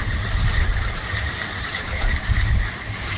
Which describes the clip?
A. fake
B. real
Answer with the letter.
A